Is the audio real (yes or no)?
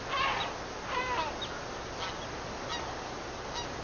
yes